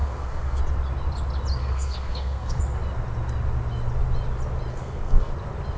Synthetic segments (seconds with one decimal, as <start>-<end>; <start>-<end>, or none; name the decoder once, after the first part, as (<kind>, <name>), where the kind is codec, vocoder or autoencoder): 0.0-0.6 (codec, SNAC); 1.6-2.6; 4.7-5.3